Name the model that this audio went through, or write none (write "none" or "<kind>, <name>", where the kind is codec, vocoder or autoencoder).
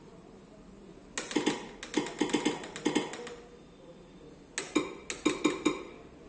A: none